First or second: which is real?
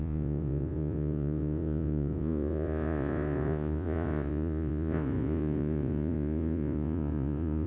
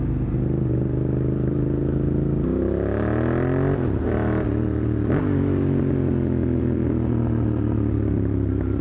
second